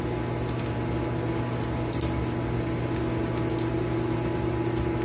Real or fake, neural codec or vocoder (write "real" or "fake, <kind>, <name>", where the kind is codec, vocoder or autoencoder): real